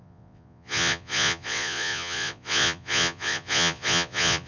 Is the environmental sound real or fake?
fake